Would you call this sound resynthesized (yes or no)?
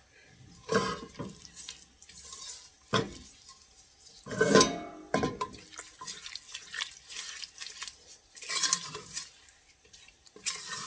no